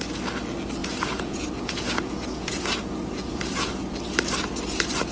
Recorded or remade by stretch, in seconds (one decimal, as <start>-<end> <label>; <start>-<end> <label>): 0.0-0.8 recorded; 0.8-3.9 remade; 3.9-5.1 recorded